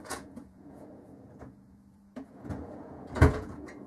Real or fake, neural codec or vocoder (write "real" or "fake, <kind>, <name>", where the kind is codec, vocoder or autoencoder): fake, vocoder, Vocos